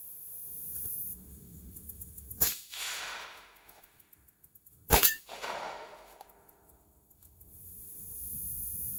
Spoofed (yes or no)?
yes